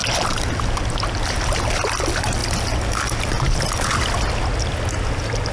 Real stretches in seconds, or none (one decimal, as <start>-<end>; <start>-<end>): 0.0-5.5